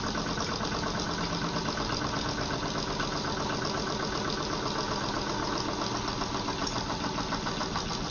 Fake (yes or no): no